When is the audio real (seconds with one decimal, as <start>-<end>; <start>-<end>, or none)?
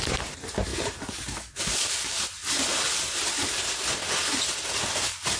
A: 0.0-0.7; 2.2-5.4